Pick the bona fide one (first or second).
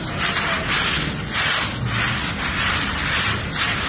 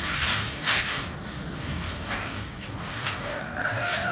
first